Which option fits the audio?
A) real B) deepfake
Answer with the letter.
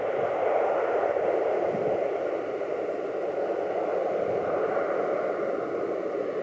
A